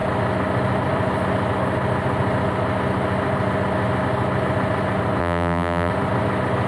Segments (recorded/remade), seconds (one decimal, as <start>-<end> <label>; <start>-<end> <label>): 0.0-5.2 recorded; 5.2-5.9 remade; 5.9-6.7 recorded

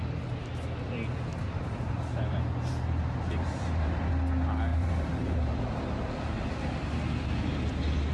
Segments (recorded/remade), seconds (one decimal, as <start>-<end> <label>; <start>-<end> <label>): 0.0-1.3 recorded; 1.3-4.1 remade; 4.1-4.7 recorded; 4.7-5.6 remade; 5.6-8.1 recorded

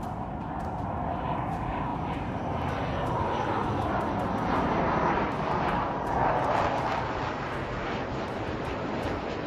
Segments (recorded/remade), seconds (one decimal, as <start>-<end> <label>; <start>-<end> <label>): 0.0-9.5 recorded

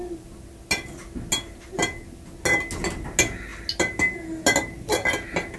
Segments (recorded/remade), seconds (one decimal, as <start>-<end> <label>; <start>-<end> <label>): 0.0-5.6 recorded

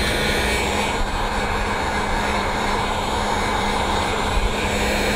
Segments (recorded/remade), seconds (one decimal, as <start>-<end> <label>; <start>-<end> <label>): 0.0-2.3 recorded; 2.3-3.1 remade; 3.1-3.5 recorded; 3.5-4.7 remade; 4.7-5.2 recorded

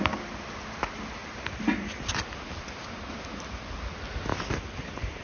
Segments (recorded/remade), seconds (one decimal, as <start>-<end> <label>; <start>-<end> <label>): 0.0-1.2 recorded; 1.2-3.3 remade; 3.3-4.3 recorded; 4.3-5.2 remade

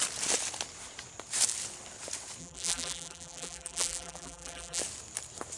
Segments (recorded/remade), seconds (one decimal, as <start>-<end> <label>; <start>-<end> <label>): 0.0-2.4 recorded; 2.4-4.8 remade; 4.8-5.6 recorded